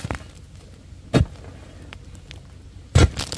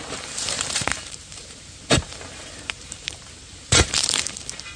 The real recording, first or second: first